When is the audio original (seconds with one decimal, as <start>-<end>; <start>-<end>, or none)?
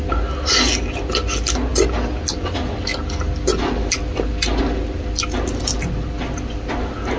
0.0-7.2